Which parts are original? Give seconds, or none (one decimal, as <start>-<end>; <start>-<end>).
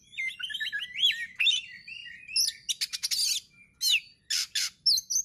0.0-5.2